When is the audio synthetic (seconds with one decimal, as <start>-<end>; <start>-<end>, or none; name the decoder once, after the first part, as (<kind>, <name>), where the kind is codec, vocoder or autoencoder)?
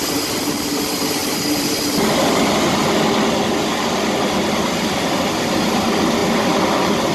none